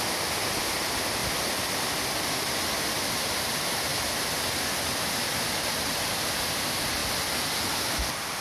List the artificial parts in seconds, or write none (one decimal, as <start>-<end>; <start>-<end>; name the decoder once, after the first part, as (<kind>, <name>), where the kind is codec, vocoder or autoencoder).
none